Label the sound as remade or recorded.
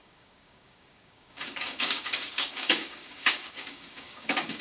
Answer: remade